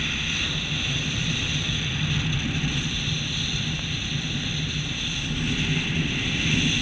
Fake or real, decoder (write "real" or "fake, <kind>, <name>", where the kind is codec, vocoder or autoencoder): real